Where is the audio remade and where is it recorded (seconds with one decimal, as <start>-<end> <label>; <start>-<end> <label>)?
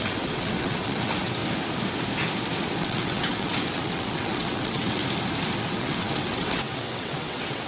0.0-1.4 remade; 1.4-2.8 recorded; 2.8-5.0 remade; 5.0-5.6 recorded; 5.6-7.7 remade